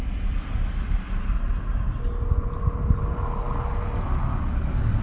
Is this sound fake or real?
real